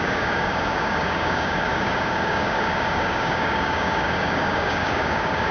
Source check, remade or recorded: remade